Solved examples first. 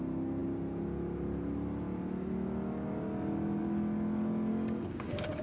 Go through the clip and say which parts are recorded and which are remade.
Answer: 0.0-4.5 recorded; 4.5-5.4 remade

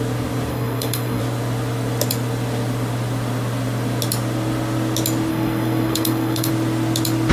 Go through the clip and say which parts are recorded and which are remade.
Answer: 0.0-0.5 recorded; 0.5-1.2 remade; 1.2-5.3 recorded; 5.3-6.5 remade; 6.5-7.3 recorded

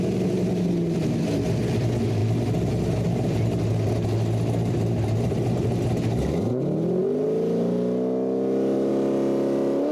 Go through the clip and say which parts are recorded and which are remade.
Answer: 0.0-9.9 recorded